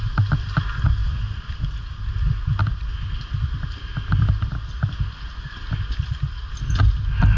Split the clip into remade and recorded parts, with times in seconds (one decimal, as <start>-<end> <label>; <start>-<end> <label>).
0.0-7.4 recorded